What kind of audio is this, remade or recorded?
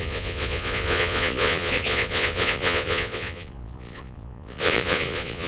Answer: remade